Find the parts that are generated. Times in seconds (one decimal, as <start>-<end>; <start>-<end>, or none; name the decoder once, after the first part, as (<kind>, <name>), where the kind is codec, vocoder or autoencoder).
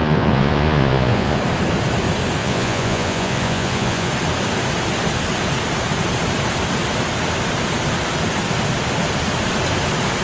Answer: 0.0-1.4 (vocoder, Vocos); 2.4-4.1